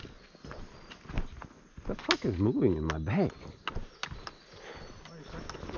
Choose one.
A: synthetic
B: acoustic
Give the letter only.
B